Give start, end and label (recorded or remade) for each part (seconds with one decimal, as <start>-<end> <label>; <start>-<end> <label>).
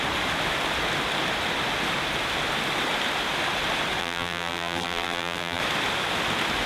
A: 0.0-4.0 recorded; 4.0-5.6 remade; 5.6-6.7 recorded